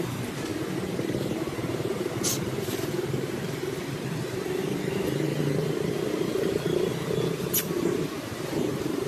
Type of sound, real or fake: fake